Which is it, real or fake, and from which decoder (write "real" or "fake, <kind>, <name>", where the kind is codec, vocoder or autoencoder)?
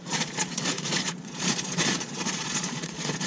fake, vocoder, Vocos